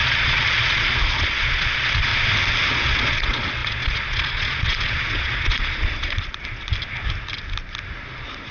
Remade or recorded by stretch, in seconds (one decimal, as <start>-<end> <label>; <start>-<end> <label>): 0.0-2.1 remade; 2.1-2.7 recorded; 2.7-6.7 remade; 6.7-8.0 recorded; 8.0-8.5 remade